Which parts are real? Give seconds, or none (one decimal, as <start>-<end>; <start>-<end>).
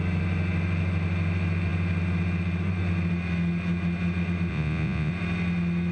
0.0-4.5; 5.1-5.9